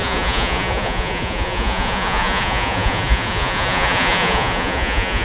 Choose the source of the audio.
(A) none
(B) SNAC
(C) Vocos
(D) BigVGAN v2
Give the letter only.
C